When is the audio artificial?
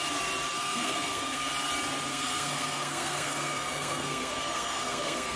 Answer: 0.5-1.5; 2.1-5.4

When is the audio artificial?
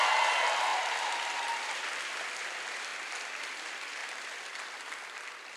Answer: 0.0-5.6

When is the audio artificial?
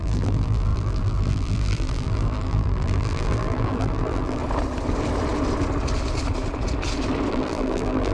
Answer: 0.0-4.4; 7.3-8.1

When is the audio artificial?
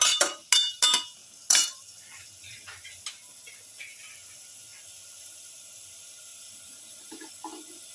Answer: 6.3-7.3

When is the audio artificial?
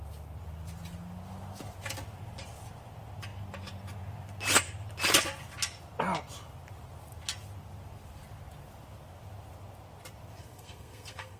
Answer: 10.4-11.4